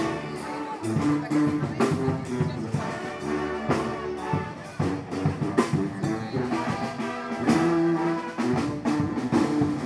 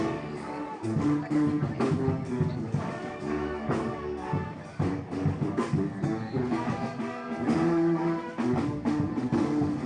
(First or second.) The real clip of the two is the first